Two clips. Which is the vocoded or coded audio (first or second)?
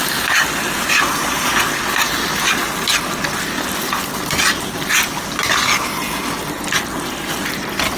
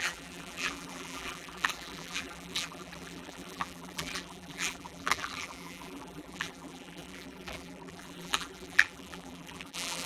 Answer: second